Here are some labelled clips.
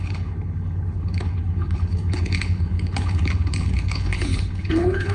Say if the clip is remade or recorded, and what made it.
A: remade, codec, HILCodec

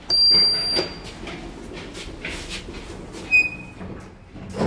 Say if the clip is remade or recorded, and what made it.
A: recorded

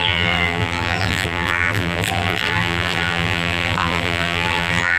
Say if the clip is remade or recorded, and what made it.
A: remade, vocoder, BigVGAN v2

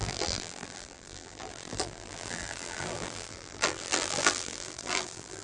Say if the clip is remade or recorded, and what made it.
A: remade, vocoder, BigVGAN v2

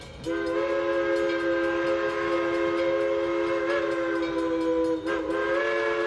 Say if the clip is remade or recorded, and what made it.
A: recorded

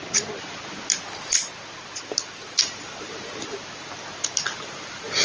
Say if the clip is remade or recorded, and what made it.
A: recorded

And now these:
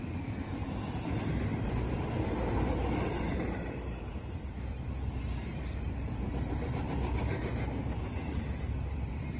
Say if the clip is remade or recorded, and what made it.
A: remade, vocoder, BigVGAN v2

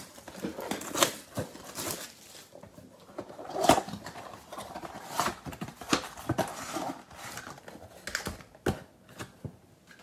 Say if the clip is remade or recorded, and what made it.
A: recorded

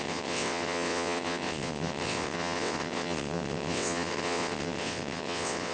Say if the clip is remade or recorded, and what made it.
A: remade, vocoder, WaveNeXt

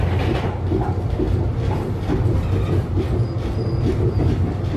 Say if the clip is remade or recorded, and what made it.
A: recorded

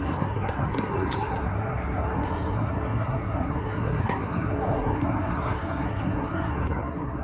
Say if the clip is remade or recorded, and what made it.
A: remade, codec, SNAC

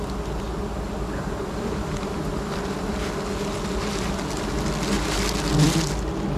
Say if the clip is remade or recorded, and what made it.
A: recorded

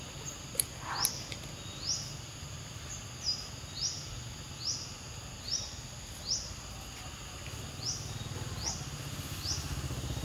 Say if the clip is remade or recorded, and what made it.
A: recorded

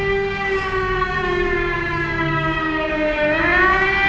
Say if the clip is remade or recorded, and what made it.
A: remade, codec, DAC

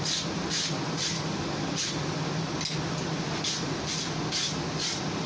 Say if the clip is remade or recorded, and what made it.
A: recorded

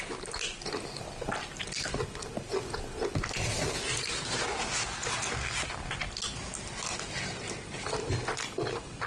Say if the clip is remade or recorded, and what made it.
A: recorded